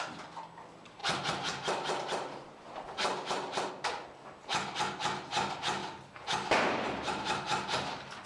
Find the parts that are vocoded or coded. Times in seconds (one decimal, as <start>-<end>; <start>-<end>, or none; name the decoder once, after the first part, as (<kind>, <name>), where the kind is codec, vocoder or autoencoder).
none